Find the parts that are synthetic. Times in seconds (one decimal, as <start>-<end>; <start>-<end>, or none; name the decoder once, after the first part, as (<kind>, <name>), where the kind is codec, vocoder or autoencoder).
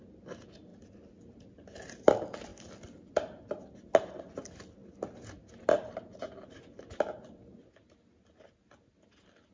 2.5-3.7 (vocoder, BigVGAN v2)